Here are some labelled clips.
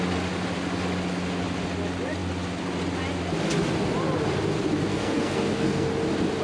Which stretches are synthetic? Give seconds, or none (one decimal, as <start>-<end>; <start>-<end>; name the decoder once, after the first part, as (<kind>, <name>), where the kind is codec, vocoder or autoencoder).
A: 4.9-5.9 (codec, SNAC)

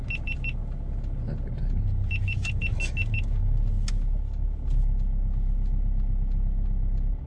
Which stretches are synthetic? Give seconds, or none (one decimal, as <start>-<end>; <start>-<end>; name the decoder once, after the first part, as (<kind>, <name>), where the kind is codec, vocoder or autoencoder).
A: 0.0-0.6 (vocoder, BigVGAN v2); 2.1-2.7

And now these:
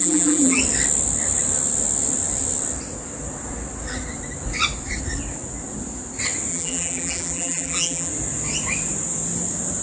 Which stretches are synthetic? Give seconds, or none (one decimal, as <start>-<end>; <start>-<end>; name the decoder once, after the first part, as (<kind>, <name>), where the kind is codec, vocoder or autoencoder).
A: 0.0-0.6 (vocoder, BigVGAN v2); 6.5-8.1